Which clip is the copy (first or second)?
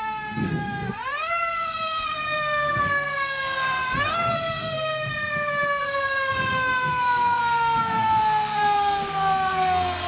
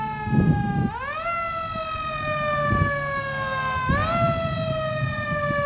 first